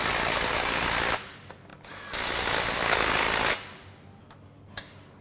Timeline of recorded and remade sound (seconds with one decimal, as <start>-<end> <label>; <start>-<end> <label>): 0.0-5.2 recorded